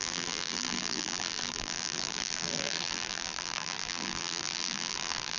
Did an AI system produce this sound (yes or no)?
yes